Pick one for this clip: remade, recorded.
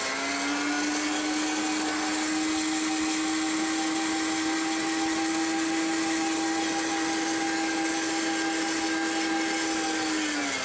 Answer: recorded